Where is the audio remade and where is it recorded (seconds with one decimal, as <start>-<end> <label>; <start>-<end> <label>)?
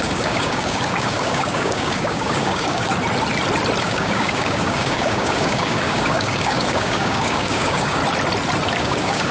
0.0-2.9 remade; 2.9-3.8 recorded; 3.8-8.0 remade; 8.0-8.8 recorded; 8.8-9.3 remade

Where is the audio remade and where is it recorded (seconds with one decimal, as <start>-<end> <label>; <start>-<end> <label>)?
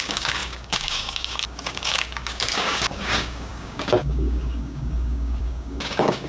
0.0-6.3 remade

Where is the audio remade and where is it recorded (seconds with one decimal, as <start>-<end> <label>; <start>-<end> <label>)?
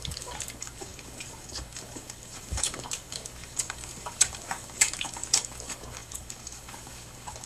0.0-7.5 remade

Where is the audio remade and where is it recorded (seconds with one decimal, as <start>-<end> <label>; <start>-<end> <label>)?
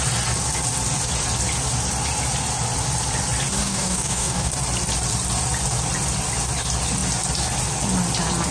0.0-3.6 recorded; 3.6-4.5 remade; 4.5-8.5 recorded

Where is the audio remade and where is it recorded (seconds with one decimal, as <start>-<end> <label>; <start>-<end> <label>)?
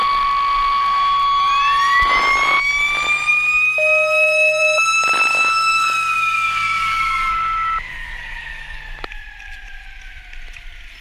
0.0-5.3 recorded; 5.3-7.3 remade; 7.3-8.0 recorded; 8.0-8.8 remade; 8.8-11.0 recorded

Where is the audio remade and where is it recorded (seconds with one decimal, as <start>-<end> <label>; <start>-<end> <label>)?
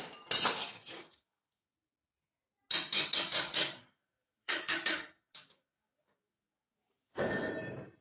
0.0-0.6 recorded; 0.6-2.0 remade; 2.0-2.9 recorded; 2.9-7.5 remade; 7.5-8.0 recorded